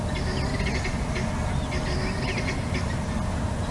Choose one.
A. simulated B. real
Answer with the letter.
B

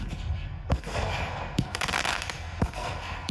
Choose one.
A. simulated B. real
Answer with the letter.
A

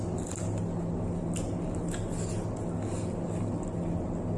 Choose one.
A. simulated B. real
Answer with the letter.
B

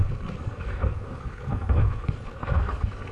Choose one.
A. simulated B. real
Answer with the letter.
A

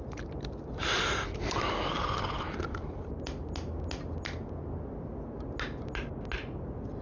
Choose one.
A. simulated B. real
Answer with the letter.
B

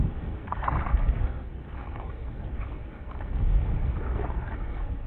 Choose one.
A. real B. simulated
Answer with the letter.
B